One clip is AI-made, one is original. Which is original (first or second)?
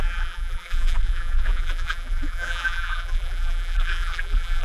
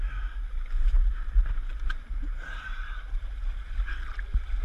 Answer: second